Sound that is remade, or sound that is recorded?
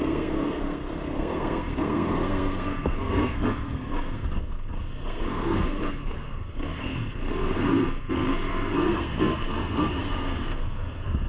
remade